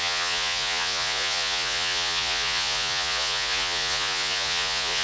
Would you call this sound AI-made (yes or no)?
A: yes